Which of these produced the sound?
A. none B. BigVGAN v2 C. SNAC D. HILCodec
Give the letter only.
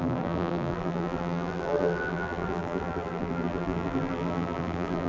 B